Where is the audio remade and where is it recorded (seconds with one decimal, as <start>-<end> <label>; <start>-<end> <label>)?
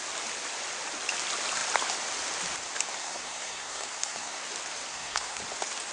0.0-3.0 recorded; 3.0-4.4 remade; 4.4-4.9 recorded; 4.9-5.4 remade; 5.4-5.9 recorded